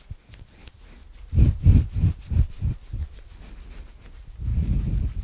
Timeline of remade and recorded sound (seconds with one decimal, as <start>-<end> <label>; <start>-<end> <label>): 0.0-1.0 recorded; 1.0-4.1 remade; 4.1-4.5 recorded; 4.5-5.2 remade

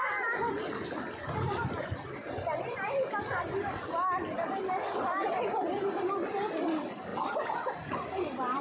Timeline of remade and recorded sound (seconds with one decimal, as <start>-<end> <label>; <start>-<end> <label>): 0.0-7.1 recorded; 7.1-8.2 remade; 8.2-8.6 recorded

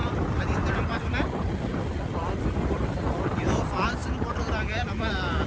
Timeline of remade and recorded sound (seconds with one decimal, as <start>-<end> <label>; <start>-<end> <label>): 0.0-5.5 remade

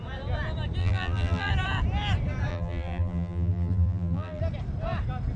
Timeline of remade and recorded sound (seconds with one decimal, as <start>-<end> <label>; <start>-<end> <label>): 0.0-0.8 recorded; 0.8-1.5 remade; 1.5-2.5 recorded; 2.5-4.4 remade; 4.4-5.4 recorded